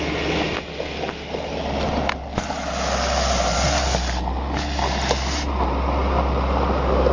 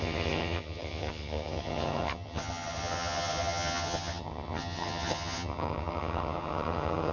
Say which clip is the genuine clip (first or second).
first